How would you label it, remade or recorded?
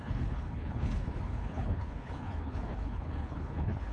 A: remade